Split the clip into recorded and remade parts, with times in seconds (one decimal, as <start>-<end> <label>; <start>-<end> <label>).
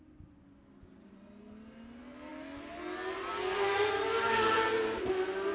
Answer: 0.0-5.5 recorded